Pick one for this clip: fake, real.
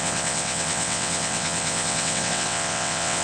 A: fake